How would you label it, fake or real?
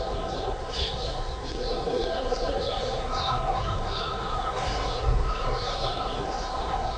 fake